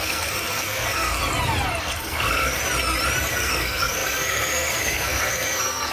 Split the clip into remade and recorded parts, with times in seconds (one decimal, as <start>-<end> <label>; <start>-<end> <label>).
0.0-1.2 remade; 1.2-1.8 recorded; 1.8-2.6 remade; 2.6-3.3 recorded; 3.3-5.9 remade